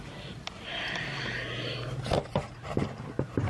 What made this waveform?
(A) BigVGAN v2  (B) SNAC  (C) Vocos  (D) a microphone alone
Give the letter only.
D